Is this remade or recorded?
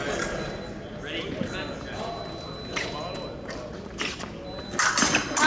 recorded